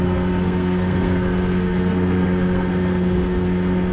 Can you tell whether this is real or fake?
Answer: fake